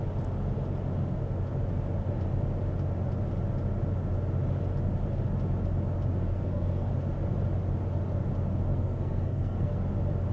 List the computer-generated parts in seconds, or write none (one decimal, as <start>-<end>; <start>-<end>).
6.3-6.9; 8.7-9.9

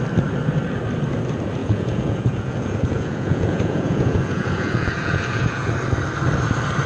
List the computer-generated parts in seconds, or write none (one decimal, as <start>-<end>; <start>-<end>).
1.6-5.7